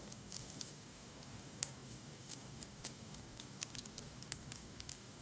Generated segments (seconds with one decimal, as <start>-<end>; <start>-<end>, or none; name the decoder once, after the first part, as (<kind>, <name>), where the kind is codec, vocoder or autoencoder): 0.0-5.2 (codec, DAC)